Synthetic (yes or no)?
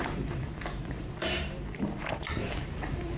yes